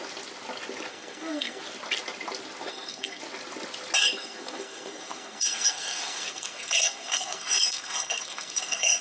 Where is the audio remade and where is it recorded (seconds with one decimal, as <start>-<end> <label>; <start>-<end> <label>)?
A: 0.0-0.9 recorded; 0.9-1.6 remade; 1.6-2.7 recorded; 2.7-3.2 remade; 3.2-4.0 recorded; 4.0-9.0 remade